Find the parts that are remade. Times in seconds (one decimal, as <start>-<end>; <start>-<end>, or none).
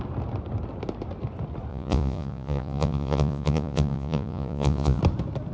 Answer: 1.7-5.0